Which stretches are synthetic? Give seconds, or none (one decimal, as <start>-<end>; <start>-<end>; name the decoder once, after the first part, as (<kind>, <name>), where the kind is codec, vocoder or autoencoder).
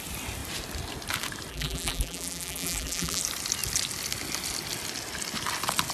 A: 1.5-3.2 (vocoder, BigVGAN v2)